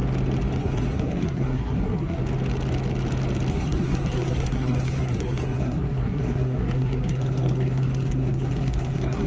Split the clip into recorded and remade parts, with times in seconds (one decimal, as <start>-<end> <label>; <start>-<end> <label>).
0.0-0.6 recorded; 0.6-2.2 remade; 2.2-3.5 recorded; 3.5-9.3 remade